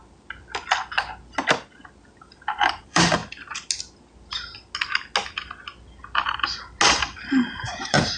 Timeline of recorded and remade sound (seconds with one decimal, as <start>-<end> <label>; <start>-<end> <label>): 0.0-2.2 recorded; 2.2-3.2 remade; 3.2-7.3 recorded; 7.3-8.2 remade